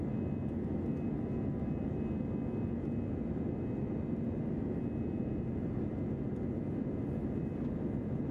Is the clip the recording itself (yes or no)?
yes